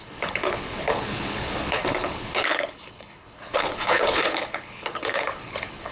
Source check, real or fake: fake